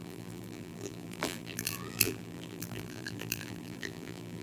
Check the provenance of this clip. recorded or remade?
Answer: remade